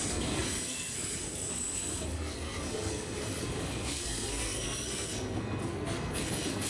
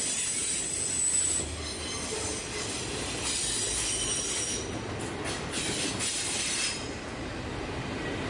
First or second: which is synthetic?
first